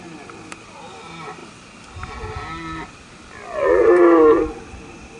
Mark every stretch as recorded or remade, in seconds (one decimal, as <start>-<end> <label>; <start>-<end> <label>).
0.0-5.2 recorded